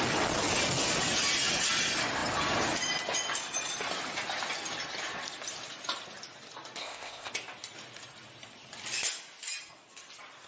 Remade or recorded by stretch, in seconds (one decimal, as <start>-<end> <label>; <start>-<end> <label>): 0.0-6.8 recorded; 6.8-7.3 remade; 7.3-10.5 recorded